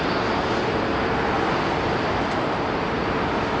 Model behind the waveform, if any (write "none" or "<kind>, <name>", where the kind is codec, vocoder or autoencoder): none